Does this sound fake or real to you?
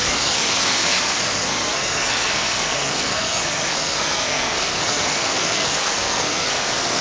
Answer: fake